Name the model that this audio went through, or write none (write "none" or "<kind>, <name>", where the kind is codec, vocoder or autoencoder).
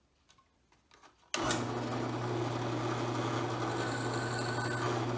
none